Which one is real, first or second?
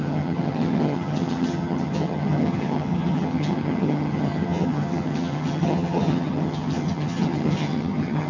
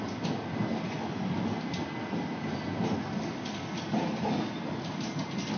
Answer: second